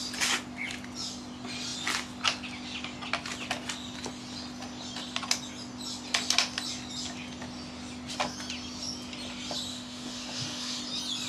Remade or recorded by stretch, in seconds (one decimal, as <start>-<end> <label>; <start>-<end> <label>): 0.0-9.7 recorded; 9.7-10.8 remade; 10.8-11.3 recorded